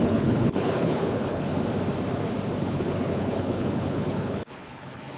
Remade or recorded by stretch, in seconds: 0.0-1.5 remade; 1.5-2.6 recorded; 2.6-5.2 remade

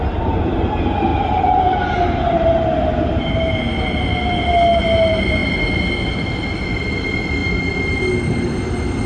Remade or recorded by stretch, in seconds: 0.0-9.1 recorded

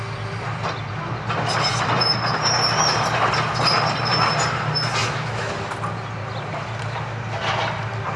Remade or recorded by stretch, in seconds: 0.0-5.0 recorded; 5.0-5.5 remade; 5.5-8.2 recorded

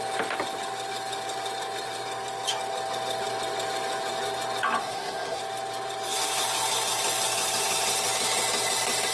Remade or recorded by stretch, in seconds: 0.0-4.8 recorded; 4.8-5.4 remade; 5.4-9.1 recorded

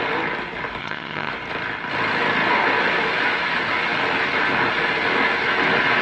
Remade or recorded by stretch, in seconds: 0.0-0.8 recorded; 0.8-1.3 remade; 1.3-6.0 recorded